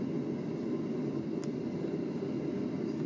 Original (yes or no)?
yes